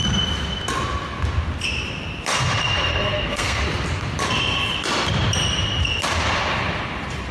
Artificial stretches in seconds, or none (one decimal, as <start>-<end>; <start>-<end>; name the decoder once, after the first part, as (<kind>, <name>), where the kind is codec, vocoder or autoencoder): 2.9-3.6 (codec, SNAC)